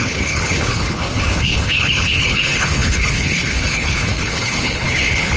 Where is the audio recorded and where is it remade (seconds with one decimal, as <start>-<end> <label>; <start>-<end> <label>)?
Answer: 0.0-5.4 remade